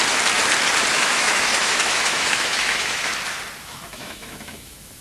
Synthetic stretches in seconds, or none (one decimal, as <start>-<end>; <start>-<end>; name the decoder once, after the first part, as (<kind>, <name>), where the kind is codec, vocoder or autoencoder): 0.9-3.1 (autoencoder, DAC-VAE); 3.6-5.0